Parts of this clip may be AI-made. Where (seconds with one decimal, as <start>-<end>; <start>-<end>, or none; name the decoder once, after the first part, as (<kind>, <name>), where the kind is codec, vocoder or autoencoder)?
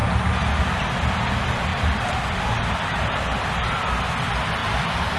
1.7-2.4 (vocoder, BigVGAN v2); 4.6-5.2